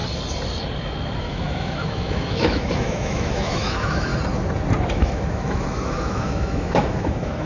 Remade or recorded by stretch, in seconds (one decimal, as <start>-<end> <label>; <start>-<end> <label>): 0.0-1.2 recorded; 1.2-4.1 remade; 4.1-4.9 recorded; 4.9-7.5 remade